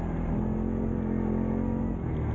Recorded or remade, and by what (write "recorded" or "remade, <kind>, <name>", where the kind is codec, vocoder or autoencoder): recorded